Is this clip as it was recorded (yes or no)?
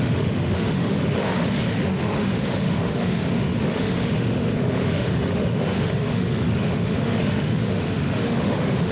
no